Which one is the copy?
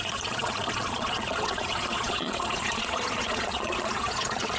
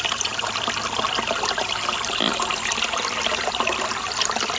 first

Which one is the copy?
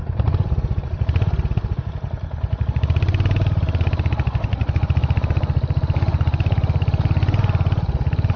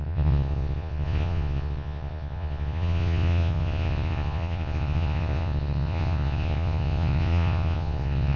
second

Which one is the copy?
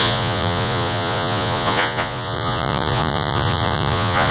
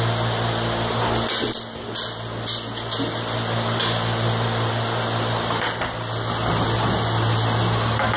first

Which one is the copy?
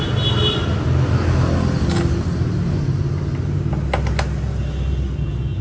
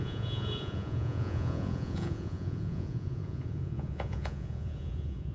second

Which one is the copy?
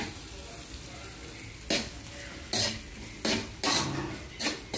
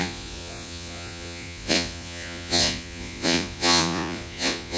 second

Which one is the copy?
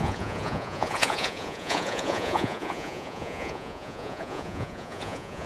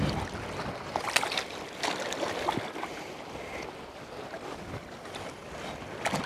first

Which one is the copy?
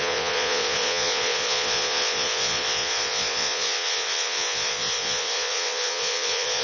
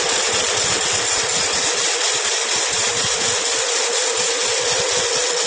first